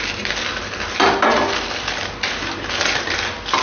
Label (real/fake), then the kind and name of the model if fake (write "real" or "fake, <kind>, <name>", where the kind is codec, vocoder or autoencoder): real